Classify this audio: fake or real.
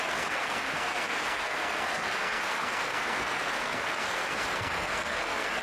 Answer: fake